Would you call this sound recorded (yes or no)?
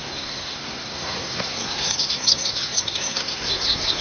no